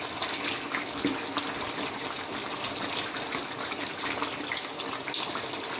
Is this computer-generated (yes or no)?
no